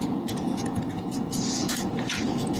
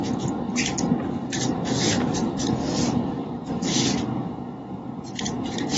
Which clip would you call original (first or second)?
second